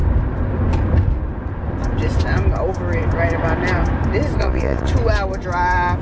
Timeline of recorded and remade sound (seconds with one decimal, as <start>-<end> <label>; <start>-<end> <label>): 0.0-4.4 recorded; 4.4-4.9 remade; 4.9-6.0 recorded